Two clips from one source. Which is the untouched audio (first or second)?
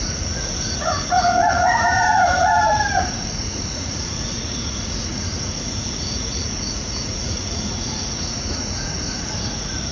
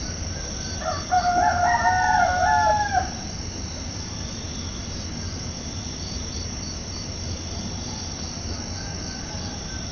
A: second